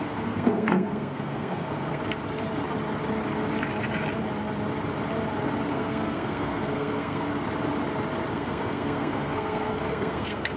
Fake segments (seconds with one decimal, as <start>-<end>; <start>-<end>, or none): 0.0-2.0; 5.7-7.3; 8.3-10.6